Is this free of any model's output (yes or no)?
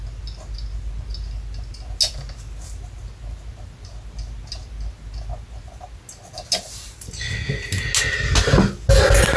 yes